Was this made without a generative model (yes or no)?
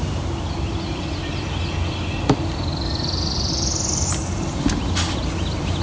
yes